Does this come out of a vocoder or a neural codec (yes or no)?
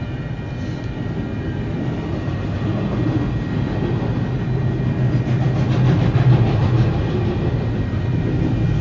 no